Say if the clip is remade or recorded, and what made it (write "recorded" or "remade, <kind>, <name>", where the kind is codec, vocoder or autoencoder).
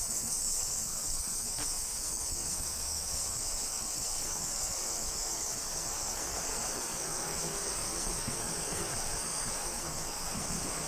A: remade, codec, SNAC